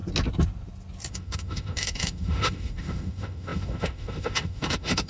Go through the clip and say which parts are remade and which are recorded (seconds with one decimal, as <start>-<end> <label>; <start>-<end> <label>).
0.0-1.1 recorded; 1.1-5.1 remade